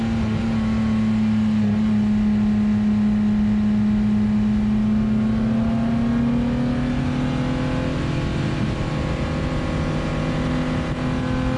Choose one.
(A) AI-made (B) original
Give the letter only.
B